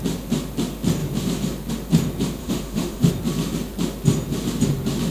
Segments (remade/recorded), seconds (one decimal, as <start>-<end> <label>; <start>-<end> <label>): 0.0-2.4 recorded; 2.4-3.1 remade; 3.1-5.1 recorded